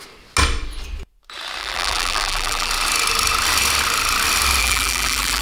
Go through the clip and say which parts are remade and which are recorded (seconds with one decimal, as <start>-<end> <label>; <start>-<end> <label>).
0.0-1.6 recorded; 1.6-2.7 remade; 2.7-4.6 recorded; 4.6-5.4 remade